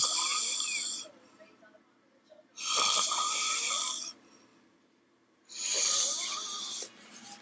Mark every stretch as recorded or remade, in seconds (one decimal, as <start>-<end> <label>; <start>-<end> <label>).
0.0-4.5 recorded; 4.5-6.8 remade; 6.8-7.4 recorded